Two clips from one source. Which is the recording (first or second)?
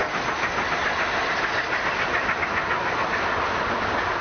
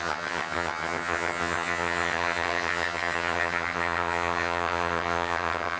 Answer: first